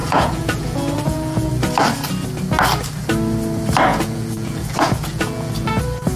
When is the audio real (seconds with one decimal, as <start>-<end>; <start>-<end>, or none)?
1.5-3.9; 5.7-6.2